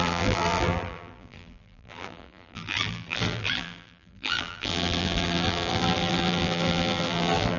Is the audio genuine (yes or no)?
no